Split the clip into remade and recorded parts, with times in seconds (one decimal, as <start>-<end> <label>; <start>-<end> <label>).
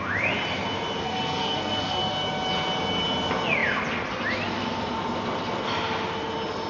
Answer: 0.0-1.0 recorded; 1.0-2.0 remade; 2.0-6.7 recorded